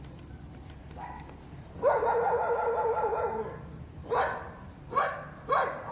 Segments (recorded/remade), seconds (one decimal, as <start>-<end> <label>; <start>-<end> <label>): 0.0-0.8 recorded; 0.8-2.1 remade; 2.1-4.0 recorded; 4.0-4.9 remade; 4.9-5.9 recorded